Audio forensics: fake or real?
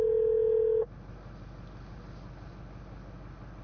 real